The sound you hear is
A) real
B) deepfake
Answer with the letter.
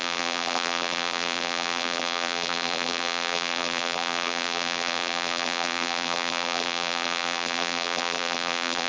B